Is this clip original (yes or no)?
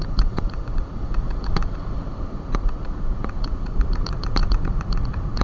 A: no